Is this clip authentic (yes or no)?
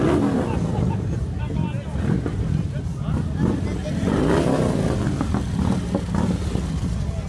yes